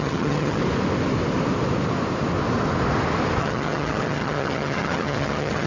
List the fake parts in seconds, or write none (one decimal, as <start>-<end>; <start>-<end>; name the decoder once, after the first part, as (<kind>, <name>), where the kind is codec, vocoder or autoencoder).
0.0-0.6 (vocoder, HiFi-GAN); 3.4-5.7